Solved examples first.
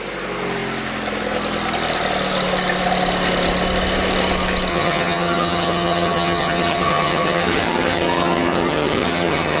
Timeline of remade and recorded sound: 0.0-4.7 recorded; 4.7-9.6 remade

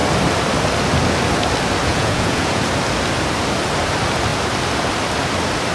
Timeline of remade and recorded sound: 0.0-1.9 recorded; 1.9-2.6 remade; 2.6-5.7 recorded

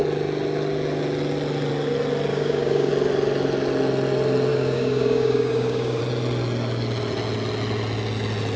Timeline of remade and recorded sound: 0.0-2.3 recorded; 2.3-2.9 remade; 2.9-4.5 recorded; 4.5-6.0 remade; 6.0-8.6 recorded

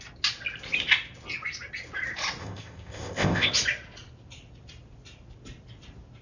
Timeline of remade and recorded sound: 0.0-2.4 recorded; 2.4-3.5 remade; 3.5-6.2 recorded